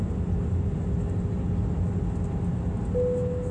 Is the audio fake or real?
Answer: real